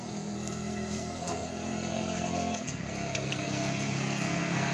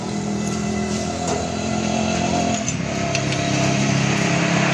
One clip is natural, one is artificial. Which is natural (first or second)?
second